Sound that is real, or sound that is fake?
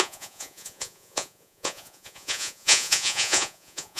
fake